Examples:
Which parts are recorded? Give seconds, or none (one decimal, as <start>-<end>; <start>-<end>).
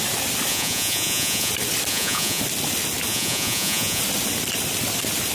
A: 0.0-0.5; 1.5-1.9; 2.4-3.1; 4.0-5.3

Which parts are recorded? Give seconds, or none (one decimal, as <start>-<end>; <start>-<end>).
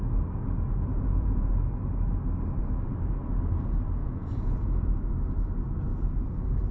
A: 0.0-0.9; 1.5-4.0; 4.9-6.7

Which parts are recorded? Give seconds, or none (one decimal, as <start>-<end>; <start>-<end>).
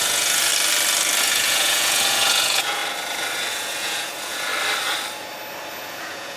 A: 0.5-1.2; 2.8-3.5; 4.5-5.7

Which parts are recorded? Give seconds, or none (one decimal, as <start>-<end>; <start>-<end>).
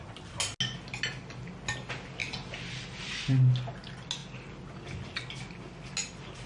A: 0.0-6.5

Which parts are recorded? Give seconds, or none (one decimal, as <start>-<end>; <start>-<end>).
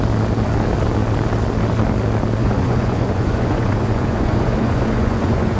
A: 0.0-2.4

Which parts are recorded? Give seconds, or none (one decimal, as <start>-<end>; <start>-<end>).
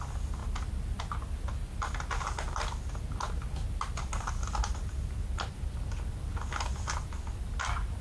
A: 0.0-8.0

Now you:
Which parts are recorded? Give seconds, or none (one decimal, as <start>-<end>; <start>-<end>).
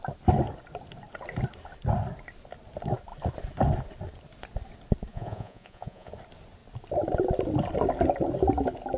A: 0.0-5.1; 6.1-9.0